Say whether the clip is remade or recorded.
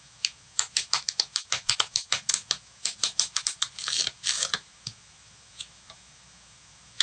remade